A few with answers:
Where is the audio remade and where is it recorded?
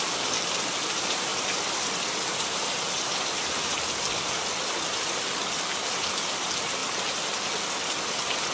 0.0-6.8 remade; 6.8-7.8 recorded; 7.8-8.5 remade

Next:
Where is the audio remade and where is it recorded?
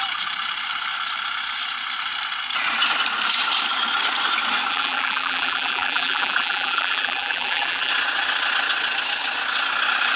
0.0-4.7 recorded; 4.7-7.9 remade; 7.9-10.2 recorded